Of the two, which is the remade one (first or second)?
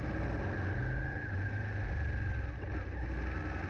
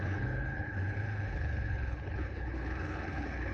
second